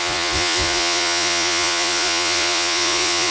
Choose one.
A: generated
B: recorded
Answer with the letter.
A